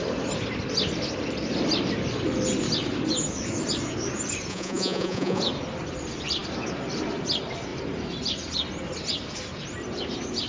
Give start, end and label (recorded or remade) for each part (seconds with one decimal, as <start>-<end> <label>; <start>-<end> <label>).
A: 0.0-4.5 recorded; 4.5-5.4 remade; 5.4-10.5 recorded